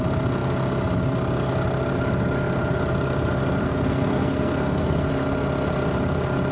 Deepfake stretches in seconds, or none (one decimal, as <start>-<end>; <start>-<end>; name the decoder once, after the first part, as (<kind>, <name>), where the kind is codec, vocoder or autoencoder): 3.6-5.1 (codec, SNAC)